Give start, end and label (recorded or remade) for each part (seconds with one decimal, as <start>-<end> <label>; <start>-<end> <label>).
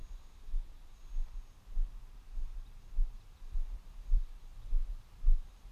0.0-3.4 recorded; 3.4-4.5 remade; 4.5-5.1 recorded; 5.1-5.7 remade